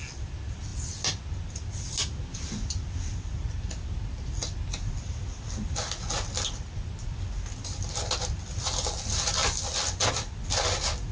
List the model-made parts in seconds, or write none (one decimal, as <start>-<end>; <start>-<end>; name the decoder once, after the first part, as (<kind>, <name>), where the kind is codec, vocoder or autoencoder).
none